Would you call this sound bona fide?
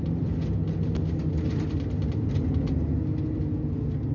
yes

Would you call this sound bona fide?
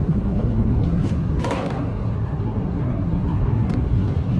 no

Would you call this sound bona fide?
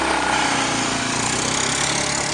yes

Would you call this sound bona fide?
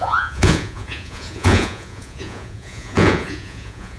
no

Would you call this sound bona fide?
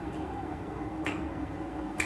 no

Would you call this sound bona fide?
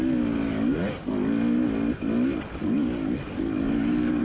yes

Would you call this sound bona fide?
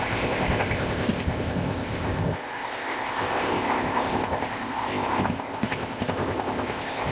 no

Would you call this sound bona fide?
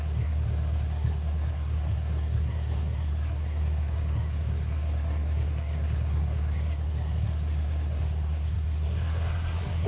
no